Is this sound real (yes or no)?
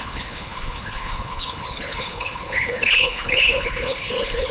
no